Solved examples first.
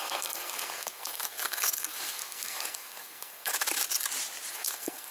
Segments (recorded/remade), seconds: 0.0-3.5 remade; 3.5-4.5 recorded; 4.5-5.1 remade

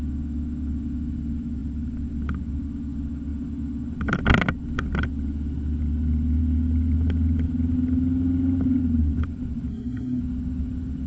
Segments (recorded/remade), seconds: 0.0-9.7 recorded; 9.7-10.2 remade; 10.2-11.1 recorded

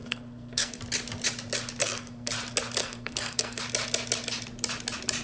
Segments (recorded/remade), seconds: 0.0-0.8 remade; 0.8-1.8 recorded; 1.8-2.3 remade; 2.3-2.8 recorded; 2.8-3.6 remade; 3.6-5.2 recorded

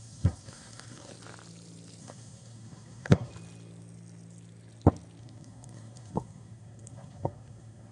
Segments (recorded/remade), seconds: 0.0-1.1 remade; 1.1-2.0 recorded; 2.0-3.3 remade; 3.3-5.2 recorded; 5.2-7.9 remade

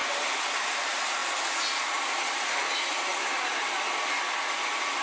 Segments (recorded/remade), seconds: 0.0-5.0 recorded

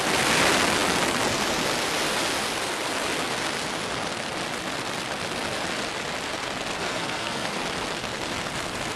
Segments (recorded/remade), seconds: 0.0-6.8 recorded; 6.8-7.6 remade; 7.6-9.0 recorded

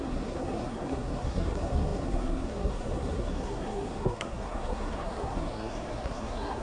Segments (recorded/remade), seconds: 0.0-6.6 remade